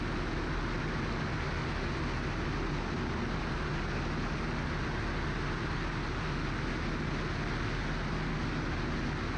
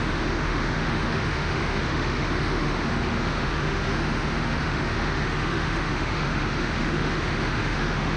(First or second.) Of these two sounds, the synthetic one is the second